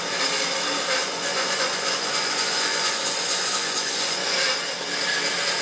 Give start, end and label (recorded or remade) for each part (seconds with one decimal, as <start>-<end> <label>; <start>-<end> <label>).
0.0-1.0 recorded; 1.0-4.4 remade; 4.4-5.6 recorded